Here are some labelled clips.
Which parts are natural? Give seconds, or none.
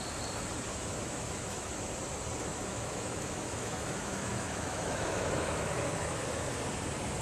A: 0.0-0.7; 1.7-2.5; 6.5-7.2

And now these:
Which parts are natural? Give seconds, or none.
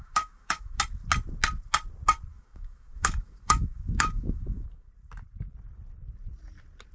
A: 0.8-2.3; 4.9-6.9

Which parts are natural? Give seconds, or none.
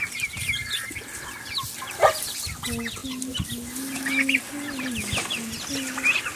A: 0.0-6.4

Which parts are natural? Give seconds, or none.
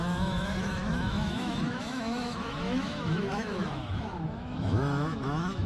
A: none